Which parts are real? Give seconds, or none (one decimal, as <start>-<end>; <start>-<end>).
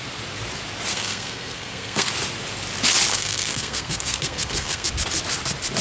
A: 0.0-0.9; 2.1-3.1; 4.9-5.8